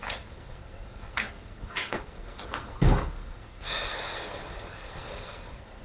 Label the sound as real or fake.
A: fake